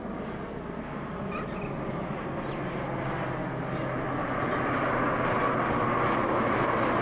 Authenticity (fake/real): real